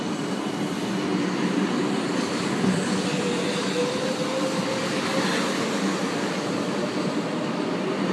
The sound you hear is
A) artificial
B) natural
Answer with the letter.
B